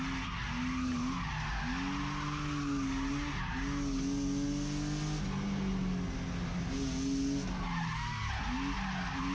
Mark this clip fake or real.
real